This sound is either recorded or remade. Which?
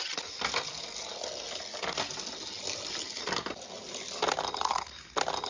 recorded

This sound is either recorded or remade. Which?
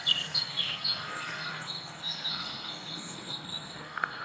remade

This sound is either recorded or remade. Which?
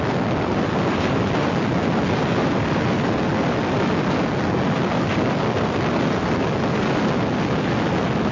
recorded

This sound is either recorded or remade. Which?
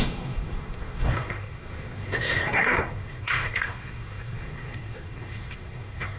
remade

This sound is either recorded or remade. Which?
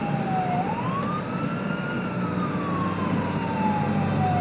recorded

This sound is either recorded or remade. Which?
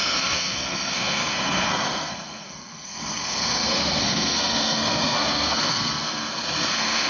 remade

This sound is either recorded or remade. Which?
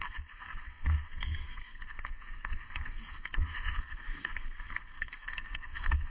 remade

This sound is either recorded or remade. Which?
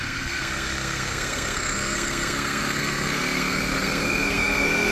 remade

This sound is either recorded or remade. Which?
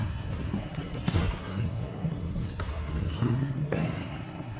remade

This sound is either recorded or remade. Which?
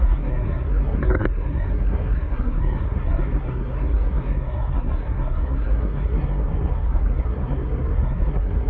remade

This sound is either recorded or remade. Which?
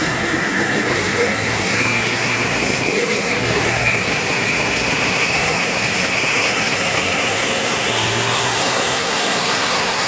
remade